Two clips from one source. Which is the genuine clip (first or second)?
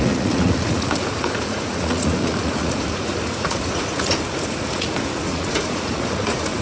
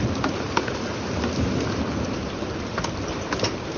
second